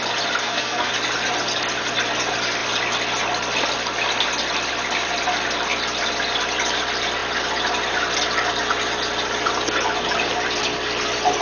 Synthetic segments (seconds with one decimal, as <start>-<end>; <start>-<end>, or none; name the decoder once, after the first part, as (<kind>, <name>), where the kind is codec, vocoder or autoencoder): 0.4-0.9 (codec, SNAC)